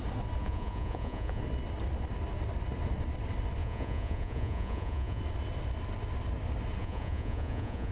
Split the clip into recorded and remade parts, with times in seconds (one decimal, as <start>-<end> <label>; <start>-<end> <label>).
0.0-0.4 recorded; 0.4-1.4 remade; 1.4-3.6 recorded; 3.6-5.2 remade; 5.2-6.8 recorded; 6.8-7.9 remade